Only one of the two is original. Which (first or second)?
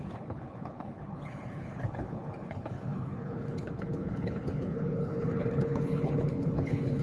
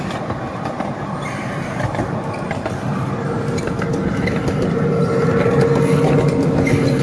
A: second